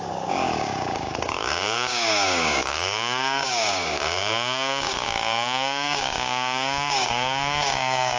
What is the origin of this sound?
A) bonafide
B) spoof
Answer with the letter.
B